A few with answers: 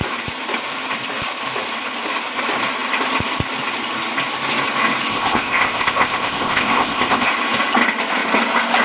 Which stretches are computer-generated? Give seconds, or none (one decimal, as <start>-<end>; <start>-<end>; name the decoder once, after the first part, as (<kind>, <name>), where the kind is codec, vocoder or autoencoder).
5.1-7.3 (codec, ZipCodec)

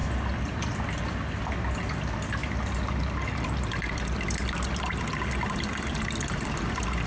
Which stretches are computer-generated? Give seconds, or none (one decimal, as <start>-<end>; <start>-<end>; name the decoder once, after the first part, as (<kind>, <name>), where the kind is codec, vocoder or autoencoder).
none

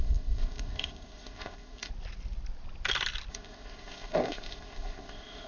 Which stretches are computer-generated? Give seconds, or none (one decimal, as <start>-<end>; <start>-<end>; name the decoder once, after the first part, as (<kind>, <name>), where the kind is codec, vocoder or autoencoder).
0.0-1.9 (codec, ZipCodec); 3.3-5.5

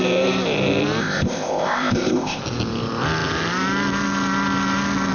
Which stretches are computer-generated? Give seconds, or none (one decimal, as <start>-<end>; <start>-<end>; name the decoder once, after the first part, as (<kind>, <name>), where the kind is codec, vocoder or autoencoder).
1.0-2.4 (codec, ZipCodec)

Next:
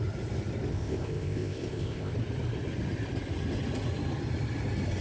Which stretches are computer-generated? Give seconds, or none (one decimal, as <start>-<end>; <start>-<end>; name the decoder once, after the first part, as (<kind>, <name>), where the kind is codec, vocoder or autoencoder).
0.7-2.1 (codec, ZipCodec)